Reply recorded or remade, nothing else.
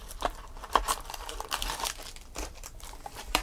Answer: remade